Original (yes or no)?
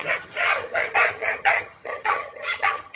no